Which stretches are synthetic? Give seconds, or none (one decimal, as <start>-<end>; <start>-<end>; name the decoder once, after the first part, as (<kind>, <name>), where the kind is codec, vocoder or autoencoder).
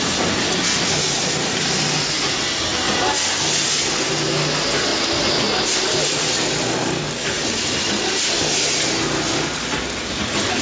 none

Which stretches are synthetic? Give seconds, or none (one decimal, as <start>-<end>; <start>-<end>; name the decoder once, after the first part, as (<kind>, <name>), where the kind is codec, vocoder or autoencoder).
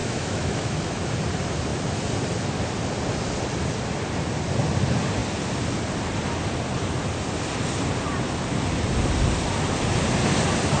0.0-1.0 (autoencoder, DAC-VAE)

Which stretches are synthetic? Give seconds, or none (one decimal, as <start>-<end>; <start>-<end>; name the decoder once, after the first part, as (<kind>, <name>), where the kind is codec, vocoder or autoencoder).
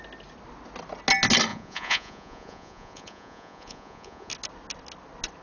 1.5-4.3 (vocoder, Vocos)